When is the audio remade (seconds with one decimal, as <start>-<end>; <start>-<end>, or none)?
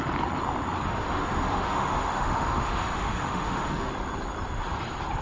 0.8-3.9